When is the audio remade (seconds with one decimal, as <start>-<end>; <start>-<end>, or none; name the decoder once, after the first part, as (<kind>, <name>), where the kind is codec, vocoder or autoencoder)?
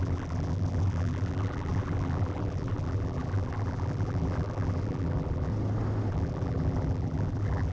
0.0-5.5 (vocoder, BigVGAN v2); 6.1-7.7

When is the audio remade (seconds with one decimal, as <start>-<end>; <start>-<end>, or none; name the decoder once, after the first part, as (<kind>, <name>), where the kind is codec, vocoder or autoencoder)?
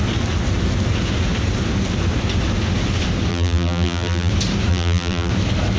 3.3-4.3 (vocoder, BigVGAN v2); 4.7-5.3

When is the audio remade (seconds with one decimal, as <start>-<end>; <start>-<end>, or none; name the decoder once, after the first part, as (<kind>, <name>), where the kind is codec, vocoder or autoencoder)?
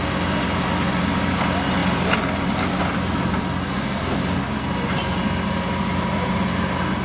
none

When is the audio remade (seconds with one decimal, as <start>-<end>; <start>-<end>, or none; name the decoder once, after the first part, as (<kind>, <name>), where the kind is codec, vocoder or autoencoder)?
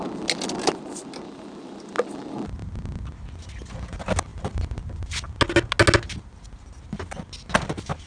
none